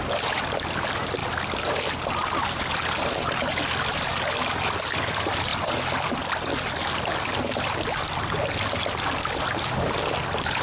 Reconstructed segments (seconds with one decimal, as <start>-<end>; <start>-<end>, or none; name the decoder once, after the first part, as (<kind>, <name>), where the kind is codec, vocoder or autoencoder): none